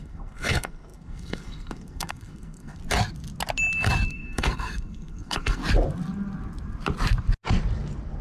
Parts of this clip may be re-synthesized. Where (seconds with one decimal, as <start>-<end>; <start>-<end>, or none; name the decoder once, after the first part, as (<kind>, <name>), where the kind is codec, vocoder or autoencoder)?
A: 0.0-2.8 (codec, SNAC); 4.1-5.6